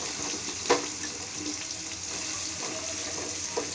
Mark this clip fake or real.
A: real